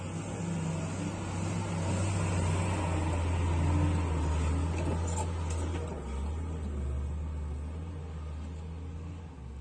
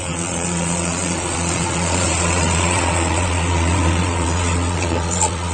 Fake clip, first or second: second